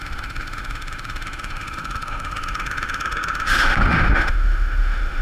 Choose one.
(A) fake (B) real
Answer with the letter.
A